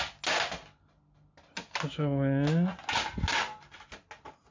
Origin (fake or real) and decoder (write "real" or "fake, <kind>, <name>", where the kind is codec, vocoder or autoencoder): real